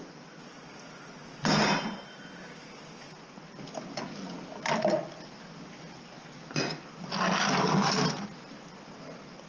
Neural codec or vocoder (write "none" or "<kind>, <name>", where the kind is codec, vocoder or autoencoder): none